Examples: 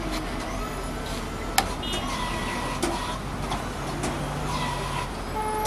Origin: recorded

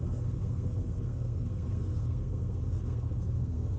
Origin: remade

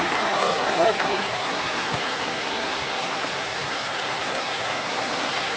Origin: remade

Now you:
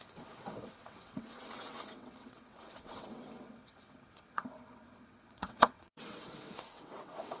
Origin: remade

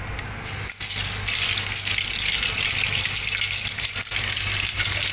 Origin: recorded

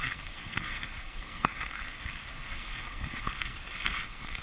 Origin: remade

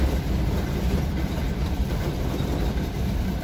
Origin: remade